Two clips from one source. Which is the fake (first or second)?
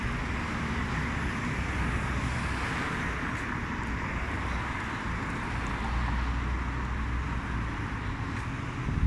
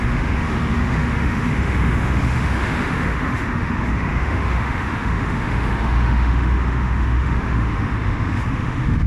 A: second